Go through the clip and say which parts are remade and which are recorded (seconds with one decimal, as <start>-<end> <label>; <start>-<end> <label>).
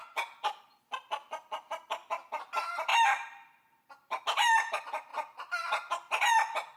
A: 0.0-1.8 remade; 1.8-2.9 recorded; 2.9-4.2 remade; 4.2-5.1 recorded; 5.1-5.7 remade; 5.7-6.8 recorded